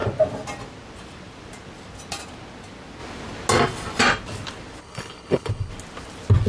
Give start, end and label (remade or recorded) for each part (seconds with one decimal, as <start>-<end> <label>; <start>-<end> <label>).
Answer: 0.0-4.8 recorded; 4.8-5.7 remade; 5.7-6.5 recorded